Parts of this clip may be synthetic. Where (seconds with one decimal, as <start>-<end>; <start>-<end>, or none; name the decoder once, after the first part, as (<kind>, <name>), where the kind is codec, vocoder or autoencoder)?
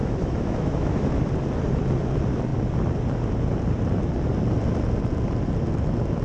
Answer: 0.0-1.2 (autoencoder, DAC-VAE)